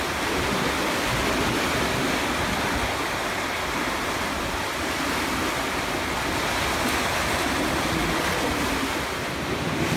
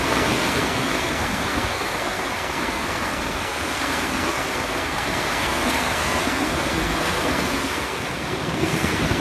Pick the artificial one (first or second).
second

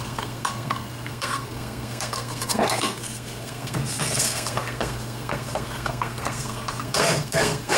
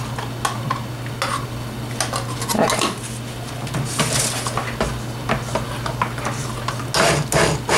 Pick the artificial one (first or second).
first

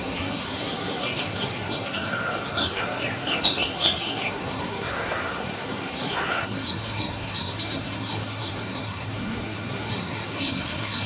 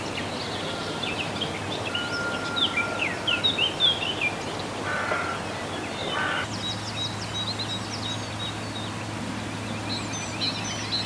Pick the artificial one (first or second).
first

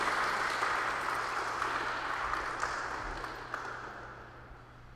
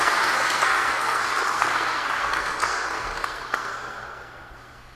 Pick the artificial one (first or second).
second